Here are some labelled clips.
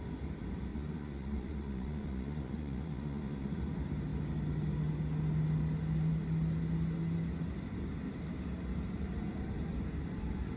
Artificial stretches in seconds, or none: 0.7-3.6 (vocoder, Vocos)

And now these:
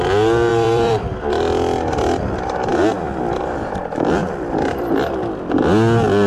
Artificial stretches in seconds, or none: 0.5-1.2 (vocoder, BigVGAN v2); 4.2-5.3

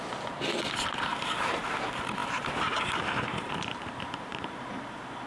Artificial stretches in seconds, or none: 1.1-1.6 (vocoder, BigVGAN v2); 2.2-4.8

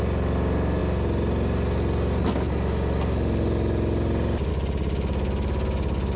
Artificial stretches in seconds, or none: none

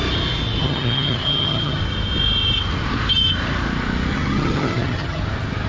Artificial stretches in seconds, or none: 0.6-1.8 (vocoder, HiFi-GAN); 4.1-5.2

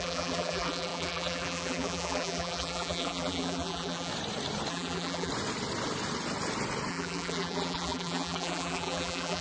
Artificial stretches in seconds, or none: 0.0-4.1 (vocoder, BigVGAN v2); 4.7-5.3; 6.9-9.4

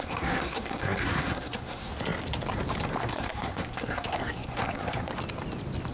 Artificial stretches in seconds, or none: 0.0-1.9 (codec, SNAC); 3.0-5.1

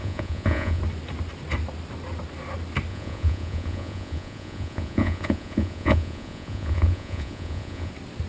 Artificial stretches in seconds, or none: 0.0-0.8 (vocoder, Vocos); 2.9-7.9